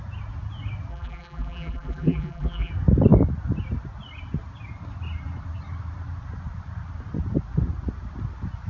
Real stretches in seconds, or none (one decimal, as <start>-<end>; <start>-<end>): 0.0-0.9; 2.7-8.7